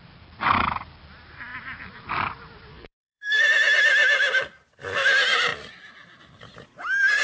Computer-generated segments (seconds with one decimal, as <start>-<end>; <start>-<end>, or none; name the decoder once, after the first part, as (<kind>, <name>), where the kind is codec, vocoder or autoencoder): 2.7-3.4 (codec, SNAC)